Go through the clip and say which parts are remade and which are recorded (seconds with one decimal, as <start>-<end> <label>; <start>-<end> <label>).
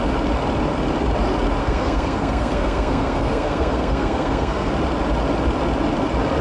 0.0-1.6 recorded; 1.6-4.7 remade; 4.7-6.4 recorded